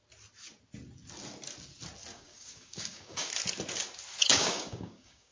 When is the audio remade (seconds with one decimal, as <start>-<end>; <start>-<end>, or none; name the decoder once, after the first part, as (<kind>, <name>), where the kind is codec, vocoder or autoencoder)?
2.1-3.3 (codec, DAC); 4.3-5.3